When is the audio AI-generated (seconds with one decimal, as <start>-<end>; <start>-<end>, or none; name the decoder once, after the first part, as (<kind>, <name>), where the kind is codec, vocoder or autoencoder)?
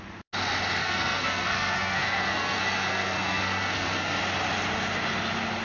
0.8-4.2 (codec, SNAC)